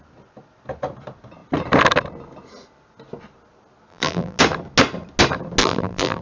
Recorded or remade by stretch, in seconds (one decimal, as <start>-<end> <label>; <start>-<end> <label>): 0.0-3.9 recorded; 3.9-4.4 remade; 4.4-5.6 recorded; 5.6-6.2 remade